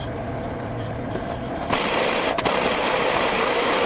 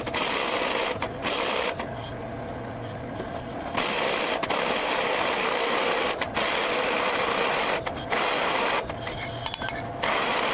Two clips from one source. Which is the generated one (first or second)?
first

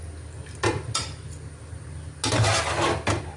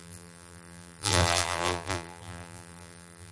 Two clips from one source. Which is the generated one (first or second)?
second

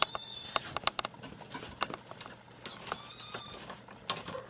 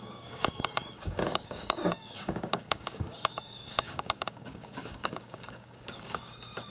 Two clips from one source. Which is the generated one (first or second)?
second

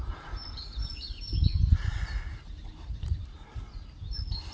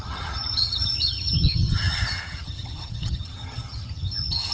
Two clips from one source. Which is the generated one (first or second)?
second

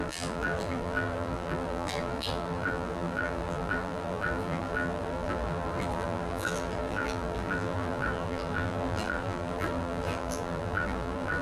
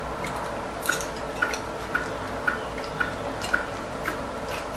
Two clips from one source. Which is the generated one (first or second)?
first